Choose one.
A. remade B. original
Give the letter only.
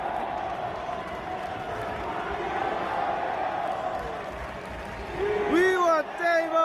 B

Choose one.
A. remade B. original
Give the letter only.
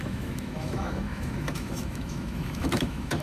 A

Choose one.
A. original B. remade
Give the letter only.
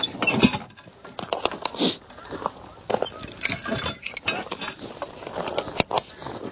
A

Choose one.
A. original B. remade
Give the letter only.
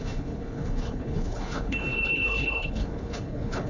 B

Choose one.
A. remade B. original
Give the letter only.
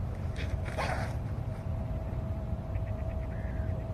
A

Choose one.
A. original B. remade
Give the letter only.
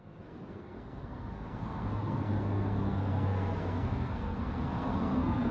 B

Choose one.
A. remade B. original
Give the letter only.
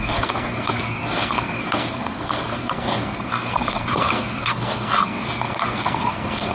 A